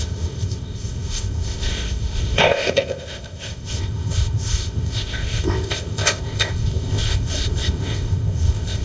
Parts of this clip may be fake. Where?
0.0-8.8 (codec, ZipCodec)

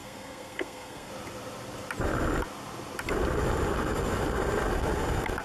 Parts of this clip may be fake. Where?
0.0-1.1 (codec, SNAC)

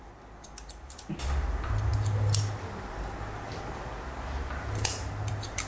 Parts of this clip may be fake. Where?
none

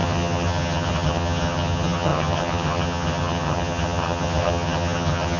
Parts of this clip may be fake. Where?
0.0-5.4 (vocoder, HiFi-GAN)